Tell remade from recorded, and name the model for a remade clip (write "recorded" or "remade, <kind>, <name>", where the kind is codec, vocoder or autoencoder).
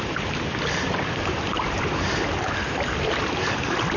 recorded